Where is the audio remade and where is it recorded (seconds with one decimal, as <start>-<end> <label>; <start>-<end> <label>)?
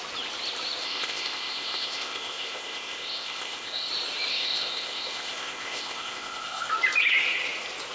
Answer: 0.0-0.8 recorded; 0.8-3.9 remade; 3.9-4.3 recorded; 4.3-6.7 remade; 6.7-7.9 recorded